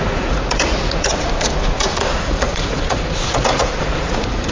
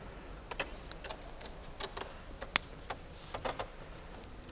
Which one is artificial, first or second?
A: first